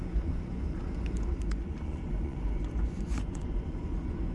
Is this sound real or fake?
fake